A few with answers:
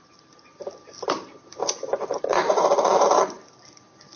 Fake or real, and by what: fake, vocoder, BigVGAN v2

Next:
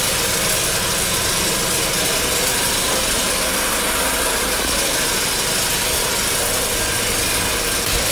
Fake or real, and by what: real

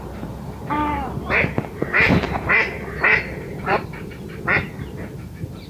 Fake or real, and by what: fake, vocoder, BigVGAN v2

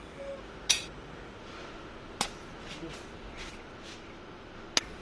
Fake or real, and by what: real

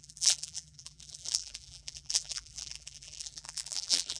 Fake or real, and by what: fake, vocoder, BigVGAN v2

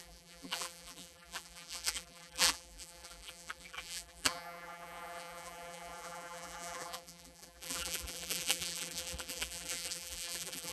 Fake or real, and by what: fake, vocoder, BigVGAN v2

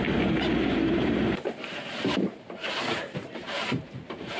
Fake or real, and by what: fake, vocoder, BigVGAN v2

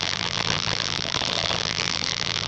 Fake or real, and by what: fake, vocoder, BigVGAN v2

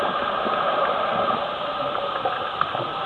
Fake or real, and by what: real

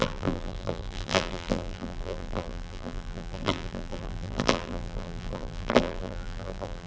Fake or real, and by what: fake, vocoder, BigVGAN v2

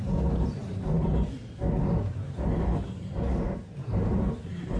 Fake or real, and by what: fake, vocoder, BigVGAN v2